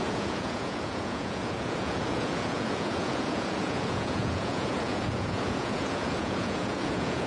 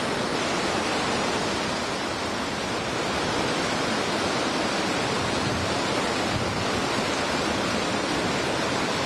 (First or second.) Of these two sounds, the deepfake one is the first